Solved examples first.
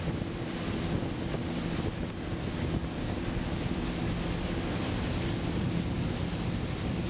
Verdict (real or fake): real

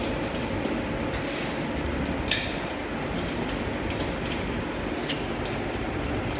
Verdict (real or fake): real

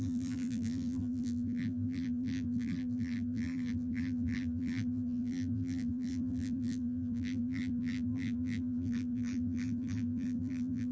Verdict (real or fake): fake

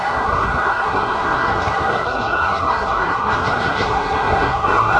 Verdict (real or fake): fake